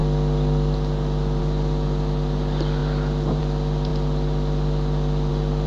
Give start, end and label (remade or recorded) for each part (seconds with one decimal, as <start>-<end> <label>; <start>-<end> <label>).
0.0-5.7 recorded